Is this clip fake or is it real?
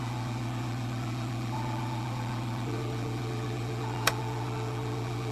fake